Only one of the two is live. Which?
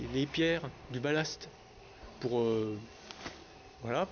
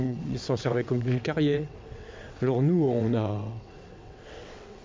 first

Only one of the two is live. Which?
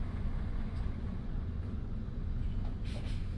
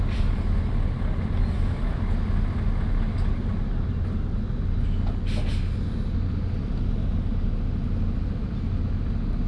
second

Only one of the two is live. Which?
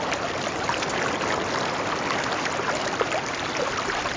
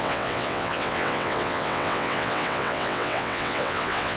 first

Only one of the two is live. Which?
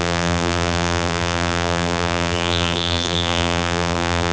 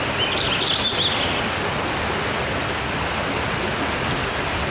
second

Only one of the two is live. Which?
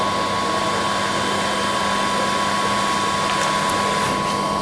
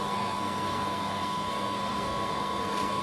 first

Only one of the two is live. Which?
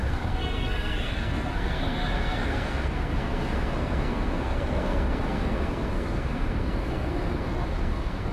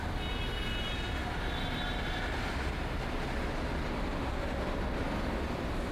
second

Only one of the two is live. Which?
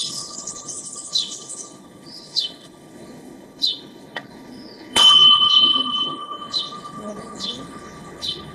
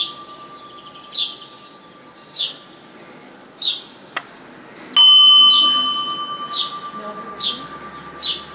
second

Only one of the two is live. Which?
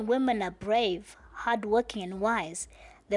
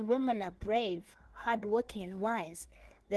first